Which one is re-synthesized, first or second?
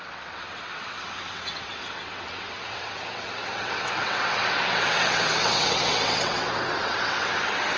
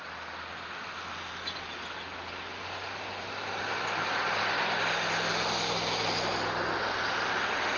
first